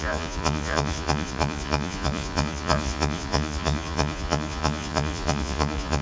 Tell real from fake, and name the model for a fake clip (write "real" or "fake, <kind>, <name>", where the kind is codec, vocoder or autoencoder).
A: fake, vocoder, Vocos